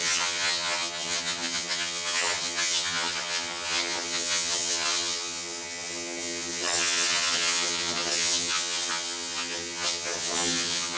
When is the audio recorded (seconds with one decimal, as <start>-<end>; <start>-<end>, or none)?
none